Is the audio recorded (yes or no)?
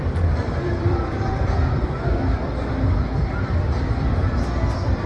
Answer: no